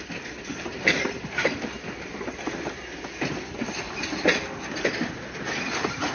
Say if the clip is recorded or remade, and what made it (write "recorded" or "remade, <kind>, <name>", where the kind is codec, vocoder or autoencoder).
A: remade, vocoder, BigVGAN v2